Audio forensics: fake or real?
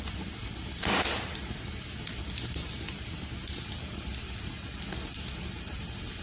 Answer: real